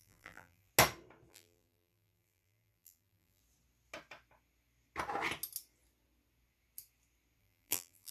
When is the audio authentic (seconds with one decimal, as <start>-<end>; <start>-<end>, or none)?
0.7-1.3; 3.4-7.4